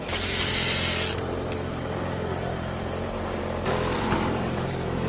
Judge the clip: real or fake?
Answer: fake